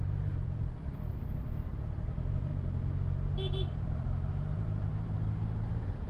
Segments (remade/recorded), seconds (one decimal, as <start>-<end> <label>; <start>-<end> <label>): 0.0-2.5 remade; 2.5-3.7 recorded; 3.7-4.9 remade; 4.9-6.1 recorded